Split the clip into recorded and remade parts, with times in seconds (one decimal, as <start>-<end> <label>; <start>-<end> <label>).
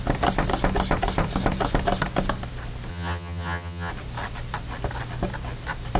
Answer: 0.0-2.9 recorded; 2.9-3.9 remade; 3.9-6.0 recorded